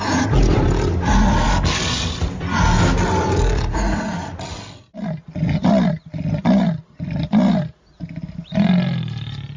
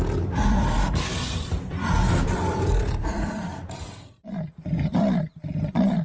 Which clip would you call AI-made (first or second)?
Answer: second